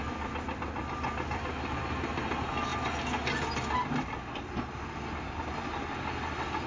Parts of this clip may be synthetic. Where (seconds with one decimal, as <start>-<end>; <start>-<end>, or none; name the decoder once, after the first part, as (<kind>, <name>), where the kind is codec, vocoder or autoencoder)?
none